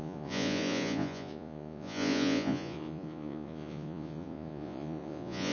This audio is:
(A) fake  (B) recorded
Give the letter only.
A